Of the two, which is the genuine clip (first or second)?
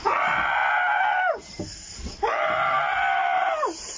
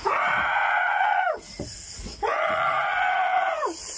first